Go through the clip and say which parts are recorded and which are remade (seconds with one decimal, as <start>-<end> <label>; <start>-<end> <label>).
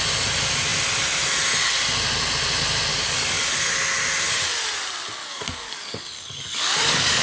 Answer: 0.0-2.9 recorded; 2.9-3.5 remade; 3.5-5.2 recorded; 5.2-7.2 remade